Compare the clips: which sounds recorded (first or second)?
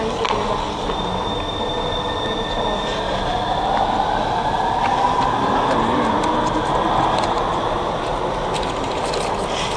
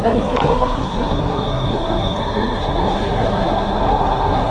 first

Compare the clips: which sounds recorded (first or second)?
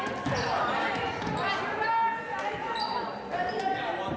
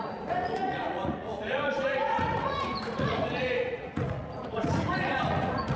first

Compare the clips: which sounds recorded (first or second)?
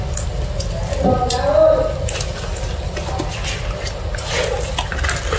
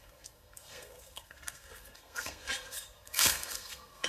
first